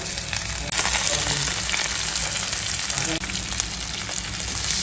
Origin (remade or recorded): recorded